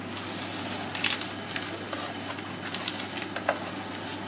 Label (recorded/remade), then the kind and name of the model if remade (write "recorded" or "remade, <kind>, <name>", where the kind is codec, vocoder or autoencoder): recorded